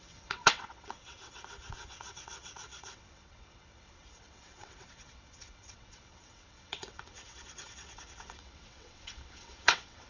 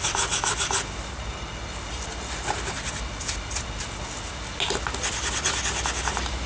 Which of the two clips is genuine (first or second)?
second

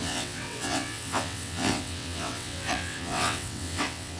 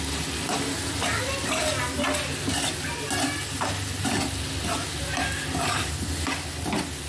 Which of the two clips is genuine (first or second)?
second